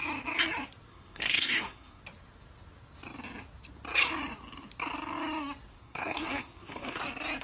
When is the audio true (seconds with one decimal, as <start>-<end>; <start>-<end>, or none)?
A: 0.0-0.9; 2.0-5.7; 7.0-7.4